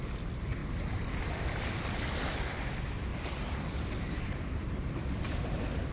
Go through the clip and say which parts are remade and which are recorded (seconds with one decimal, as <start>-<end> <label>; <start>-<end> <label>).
0.0-0.6 recorded; 0.6-1.2 remade; 1.2-3.1 recorded; 3.1-5.9 remade